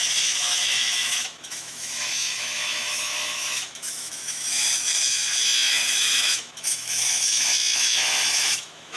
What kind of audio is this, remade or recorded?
remade